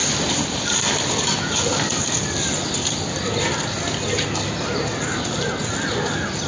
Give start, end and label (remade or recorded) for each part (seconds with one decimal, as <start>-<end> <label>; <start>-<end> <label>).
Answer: 0.0-6.5 recorded